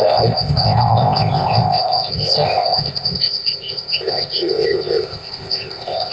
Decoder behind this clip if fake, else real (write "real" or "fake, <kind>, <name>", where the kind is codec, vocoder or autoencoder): fake, codec, ZipCodec